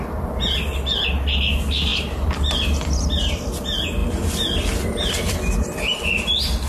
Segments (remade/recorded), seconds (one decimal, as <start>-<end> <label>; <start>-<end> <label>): 0.0-1.9 recorded; 1.9-3.5 remade; 3.5-4.0 recorded; 4.0-5.4 remade; 5.4-6.7 recorded